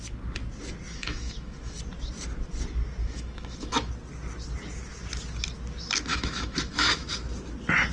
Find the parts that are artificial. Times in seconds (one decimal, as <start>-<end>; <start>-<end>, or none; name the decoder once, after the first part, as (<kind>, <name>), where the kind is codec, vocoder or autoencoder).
0.9-1.8 (autoencoder, DAC-VAE); 3.0-3.9; 6.1-7.1

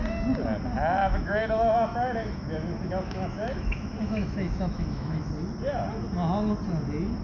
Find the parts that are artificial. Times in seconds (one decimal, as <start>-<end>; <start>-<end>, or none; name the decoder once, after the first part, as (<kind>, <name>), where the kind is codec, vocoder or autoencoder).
1.0-5.3 (autoencoder, DAC-VAE)

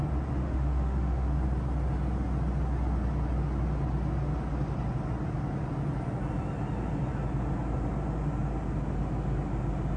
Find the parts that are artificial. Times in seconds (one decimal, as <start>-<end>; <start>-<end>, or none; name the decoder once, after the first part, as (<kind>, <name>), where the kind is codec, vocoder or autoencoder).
0.4-1.3 (autoencoder, DAC-VAE)

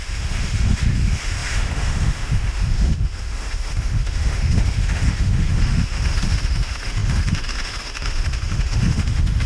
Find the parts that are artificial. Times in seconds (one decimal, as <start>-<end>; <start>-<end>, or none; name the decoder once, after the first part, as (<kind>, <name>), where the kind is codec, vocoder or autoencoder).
0.0-9.5 (autoencoder, DAC-VAE)

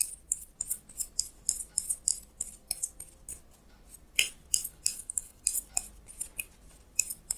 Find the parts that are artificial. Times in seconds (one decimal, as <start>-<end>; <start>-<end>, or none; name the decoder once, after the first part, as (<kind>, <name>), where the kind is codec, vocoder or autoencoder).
4.9-5.4 (autoencoder, DAC-VAE)